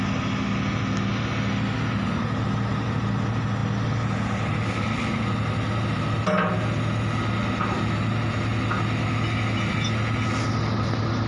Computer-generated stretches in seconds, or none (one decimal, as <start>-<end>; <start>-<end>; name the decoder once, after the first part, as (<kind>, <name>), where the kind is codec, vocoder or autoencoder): none